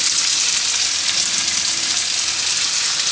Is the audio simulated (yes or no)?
no